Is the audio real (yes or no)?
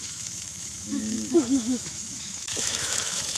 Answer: no